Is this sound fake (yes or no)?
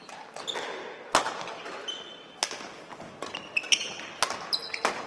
no